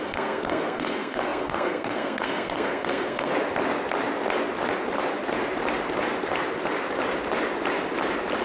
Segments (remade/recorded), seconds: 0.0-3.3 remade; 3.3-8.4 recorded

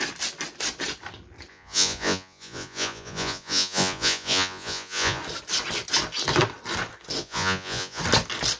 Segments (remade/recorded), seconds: 0.0-1.5 recorded; 1.5-5.2 remade; 5.2-7.2 recorded; 7.2-8.0 remade; 8.0-8.6 recorded

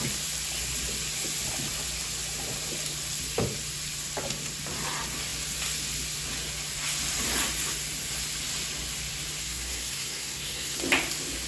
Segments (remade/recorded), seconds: 0.0-9.4 recorded; 9.4-10.8 remade; 10.8-11.5 recorded

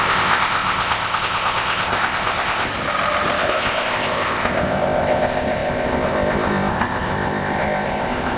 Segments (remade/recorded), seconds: 0.0-2.7 remade; 2.7-3.4 recorded; 3.4-8.4 remade

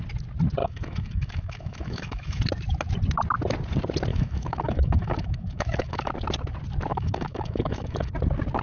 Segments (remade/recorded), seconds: 0.0-0.6 recorded; 0.6-2.4 remade; 2.4-4.1 recorded; 4.1-6.1 remade; 6.1-6.9 recorded; 6.9-8.1 remade; 8.1-8.6 recorded

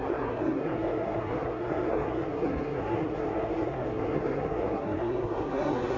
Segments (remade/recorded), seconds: 0.0-6.0 remade